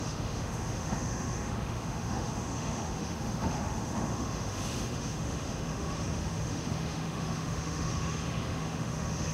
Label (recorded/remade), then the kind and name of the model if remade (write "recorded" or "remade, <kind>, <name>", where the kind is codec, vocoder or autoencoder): remade, autoencoder, DAC-VAE